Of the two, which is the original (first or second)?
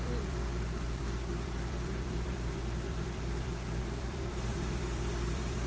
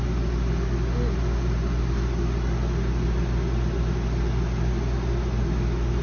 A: second